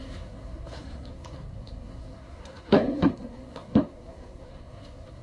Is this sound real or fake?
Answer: fake